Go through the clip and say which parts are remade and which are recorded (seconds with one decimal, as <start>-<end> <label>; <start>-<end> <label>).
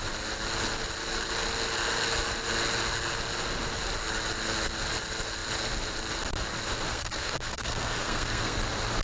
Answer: 0.0-6.9 recorded; 6.9-8.6 remade; 8.6-9.0 recorded